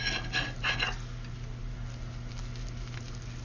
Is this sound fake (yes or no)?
no